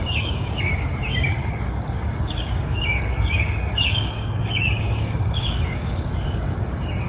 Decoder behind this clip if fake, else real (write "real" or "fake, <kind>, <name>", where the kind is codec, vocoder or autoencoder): fake, codec, DAC